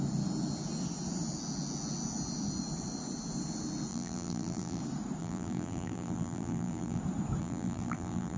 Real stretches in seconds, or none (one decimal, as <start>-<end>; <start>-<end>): 0.0-3.9; 4.8-5.2; 7.0-7.4